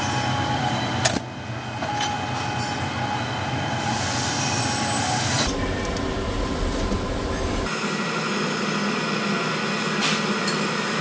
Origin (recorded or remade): recorded